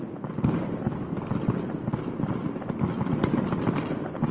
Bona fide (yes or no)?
yes